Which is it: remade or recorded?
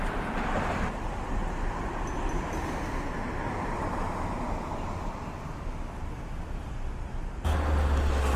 recorded